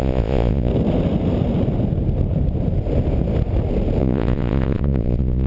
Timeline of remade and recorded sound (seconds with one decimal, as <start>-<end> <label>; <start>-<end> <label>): 0.0-0.7 remade; 0.7-4.0 recorded; 4.0-5.5 remade